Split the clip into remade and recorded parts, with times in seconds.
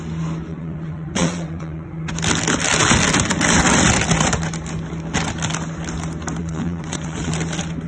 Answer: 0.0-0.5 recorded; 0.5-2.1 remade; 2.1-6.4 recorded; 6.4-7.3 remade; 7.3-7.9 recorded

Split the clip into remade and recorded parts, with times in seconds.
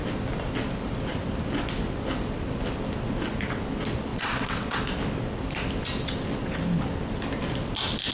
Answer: 0.0-4.1 recorded; 4.1-4.8 remade; 4.8-8.1 recorded